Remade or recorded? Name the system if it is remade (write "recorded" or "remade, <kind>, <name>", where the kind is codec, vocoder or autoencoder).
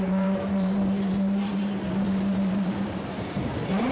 remade, vocoder, BigVGAN v2